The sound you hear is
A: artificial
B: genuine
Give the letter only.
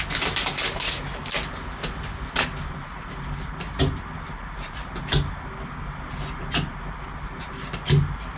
B